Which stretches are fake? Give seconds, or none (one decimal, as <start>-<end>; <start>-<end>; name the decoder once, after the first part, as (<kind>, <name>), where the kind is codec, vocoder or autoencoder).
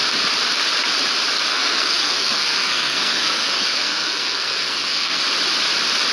1.5-5.2 (codec, SNAC)